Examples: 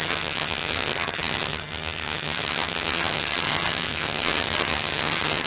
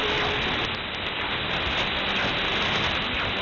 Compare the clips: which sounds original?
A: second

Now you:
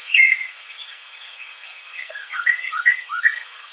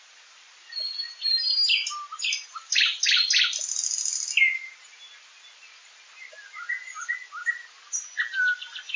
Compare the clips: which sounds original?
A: second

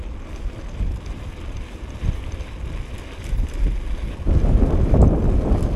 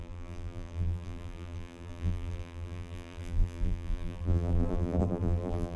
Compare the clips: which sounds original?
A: first